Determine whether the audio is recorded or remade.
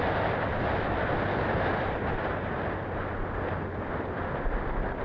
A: recorded